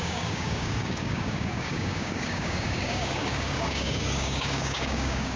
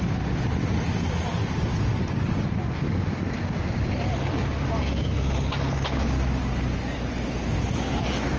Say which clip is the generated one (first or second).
first